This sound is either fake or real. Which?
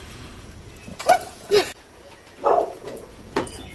fake